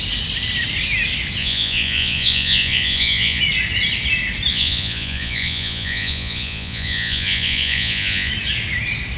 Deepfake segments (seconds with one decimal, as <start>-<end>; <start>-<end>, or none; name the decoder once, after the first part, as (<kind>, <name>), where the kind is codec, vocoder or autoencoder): 1.4-3.4 (vocoder, Vocos); 4.5-8.3